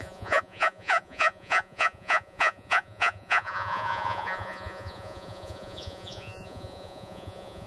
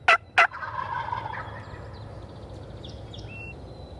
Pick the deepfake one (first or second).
first